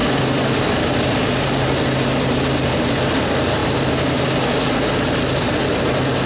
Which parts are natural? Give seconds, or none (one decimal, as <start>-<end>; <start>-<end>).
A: 0.0-6.3